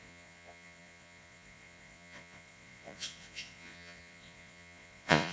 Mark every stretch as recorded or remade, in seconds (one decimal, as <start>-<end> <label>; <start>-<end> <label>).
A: 0.0-5.3 remade